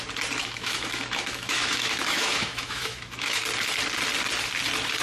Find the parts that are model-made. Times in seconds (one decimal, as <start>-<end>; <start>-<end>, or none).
0.4-3.4